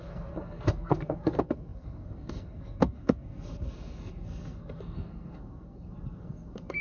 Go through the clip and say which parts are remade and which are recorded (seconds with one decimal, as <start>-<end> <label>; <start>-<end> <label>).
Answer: 0.0-6.8 remade

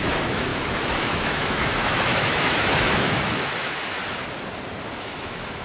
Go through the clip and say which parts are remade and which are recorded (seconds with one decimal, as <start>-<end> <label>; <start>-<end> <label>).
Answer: 0.0-4.0 remade; 4.0-5.0 recorded; 5.0-5.6 remade